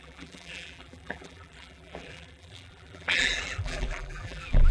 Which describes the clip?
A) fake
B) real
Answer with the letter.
A